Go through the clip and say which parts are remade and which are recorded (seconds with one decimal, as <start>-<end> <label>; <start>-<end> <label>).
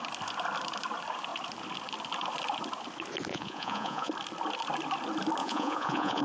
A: 0.0-3.3 recorded; 3.3-4.1 remade; 4.1-5.4 recorded; 5.4-6.2 remade